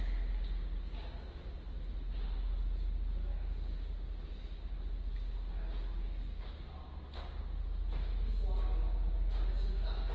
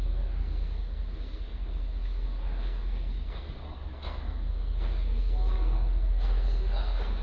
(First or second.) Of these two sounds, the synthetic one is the second